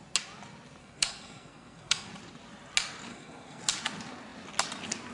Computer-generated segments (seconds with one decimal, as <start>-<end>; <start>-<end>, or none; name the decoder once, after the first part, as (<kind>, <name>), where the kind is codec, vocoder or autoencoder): 0.8-2.1 (codec, SNAC); 3.1-3.6